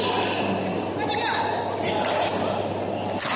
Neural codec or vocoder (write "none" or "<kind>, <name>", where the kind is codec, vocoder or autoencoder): none